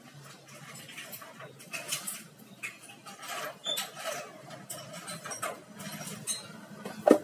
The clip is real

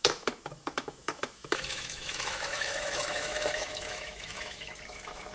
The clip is fake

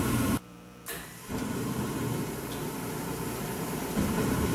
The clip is fake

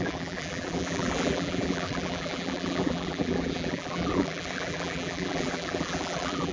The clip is fake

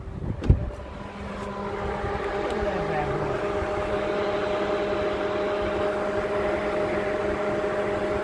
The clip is real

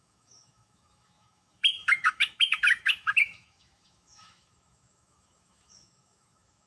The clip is fake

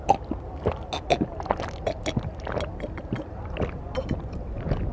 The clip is real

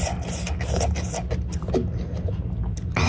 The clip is real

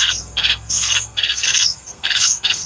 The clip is fake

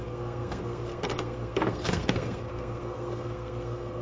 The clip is fake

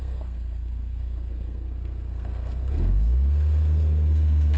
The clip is fake